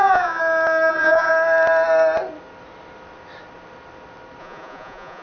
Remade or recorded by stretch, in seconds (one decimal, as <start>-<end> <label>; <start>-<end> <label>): 0.0-0.4 remade; 0.4-0.9 recorded; 0.9-1.3 remade; 1.3-4.4 recorded; 4.4-5.2 remade